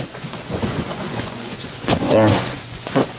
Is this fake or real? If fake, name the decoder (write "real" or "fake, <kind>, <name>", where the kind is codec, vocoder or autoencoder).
fake, vocoder, Vocos